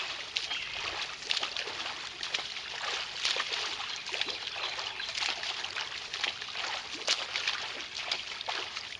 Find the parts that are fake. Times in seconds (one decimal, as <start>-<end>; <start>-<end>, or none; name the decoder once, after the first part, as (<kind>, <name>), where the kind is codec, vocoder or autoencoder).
8.0-9.0 (vocoder, BigVGAN v2)